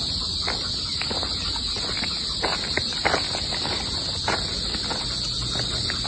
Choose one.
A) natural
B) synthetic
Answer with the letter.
A